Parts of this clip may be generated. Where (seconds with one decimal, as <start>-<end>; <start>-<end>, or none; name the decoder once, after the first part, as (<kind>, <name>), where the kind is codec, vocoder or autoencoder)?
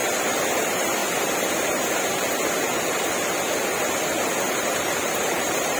0.6-1.0 (vocoder, BigVGAN v2); 4.5-5.8